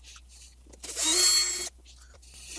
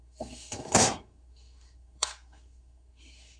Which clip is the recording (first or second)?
first